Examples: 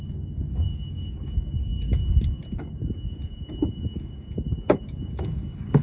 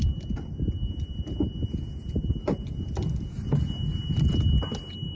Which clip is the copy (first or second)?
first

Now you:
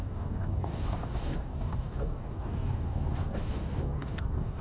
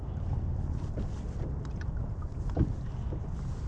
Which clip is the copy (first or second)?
first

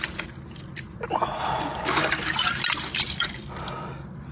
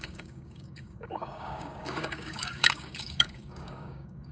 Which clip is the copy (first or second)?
second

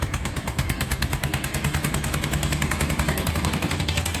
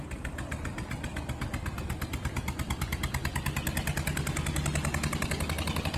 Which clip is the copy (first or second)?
first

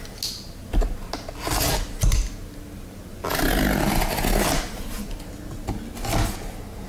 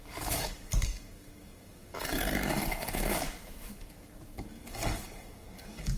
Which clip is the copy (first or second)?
second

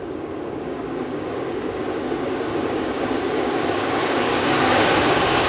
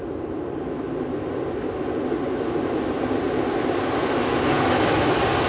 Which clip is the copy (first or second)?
first